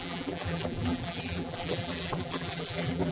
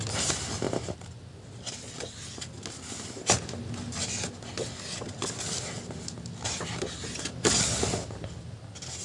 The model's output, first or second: first